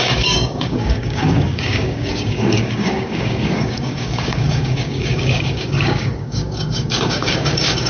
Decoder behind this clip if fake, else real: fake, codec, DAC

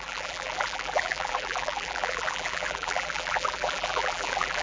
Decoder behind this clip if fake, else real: fake, vocoder, BigVGAN v2